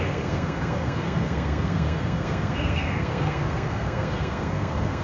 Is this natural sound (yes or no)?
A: no